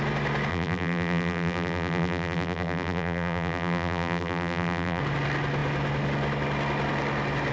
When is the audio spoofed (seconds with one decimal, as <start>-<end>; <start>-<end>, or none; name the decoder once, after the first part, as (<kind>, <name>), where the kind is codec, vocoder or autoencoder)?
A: 0.5-5.0 (vocoder, BigVGAN v2)